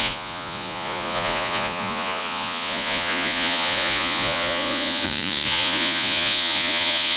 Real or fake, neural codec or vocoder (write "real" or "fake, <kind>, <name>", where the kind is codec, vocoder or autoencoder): fake, vocoder, Vocos